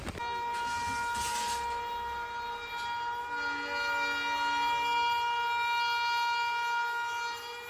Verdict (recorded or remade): recorded